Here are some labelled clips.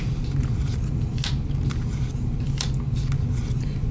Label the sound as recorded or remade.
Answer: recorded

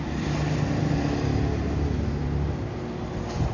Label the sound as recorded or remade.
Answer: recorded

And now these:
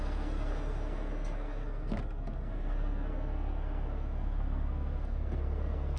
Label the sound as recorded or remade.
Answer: remade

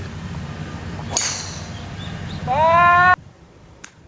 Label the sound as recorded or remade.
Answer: recorded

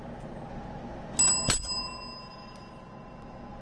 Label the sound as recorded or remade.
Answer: recorded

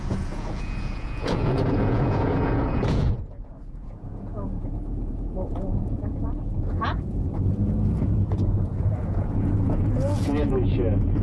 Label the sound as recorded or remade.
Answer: remade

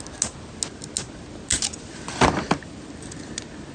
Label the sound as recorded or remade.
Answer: recorded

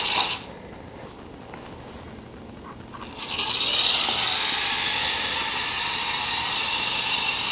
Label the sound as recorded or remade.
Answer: recorded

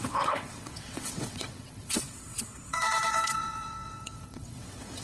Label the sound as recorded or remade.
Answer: remade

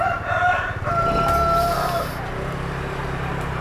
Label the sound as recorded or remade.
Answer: remade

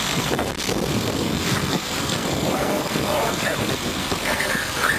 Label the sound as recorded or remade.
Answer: remade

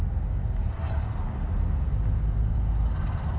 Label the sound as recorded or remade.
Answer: recorded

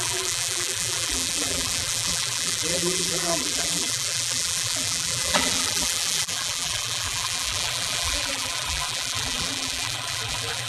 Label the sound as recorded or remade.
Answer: remade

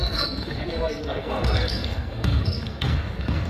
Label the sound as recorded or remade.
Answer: remade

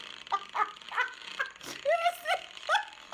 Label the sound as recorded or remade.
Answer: recorded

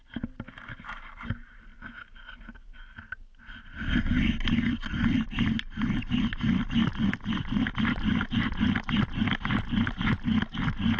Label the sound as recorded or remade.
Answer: recorded